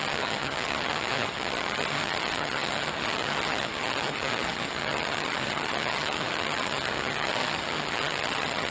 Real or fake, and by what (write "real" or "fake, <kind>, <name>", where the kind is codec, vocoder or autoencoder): fake, vocoder, HiFi-GAN